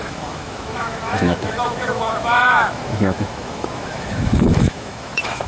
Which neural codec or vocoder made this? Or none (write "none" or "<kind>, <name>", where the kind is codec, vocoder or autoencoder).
autoencoder, DAC-VAE